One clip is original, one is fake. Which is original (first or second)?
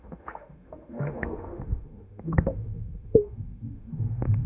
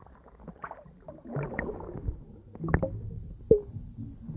second